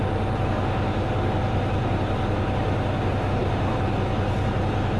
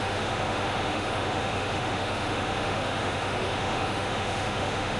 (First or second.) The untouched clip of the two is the first